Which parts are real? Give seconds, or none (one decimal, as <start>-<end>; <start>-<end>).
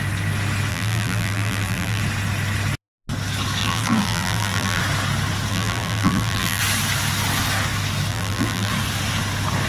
0.0-0.7; 2.0-3.6; 4.8-5.5; 6.6-8.1; 8.7-9.7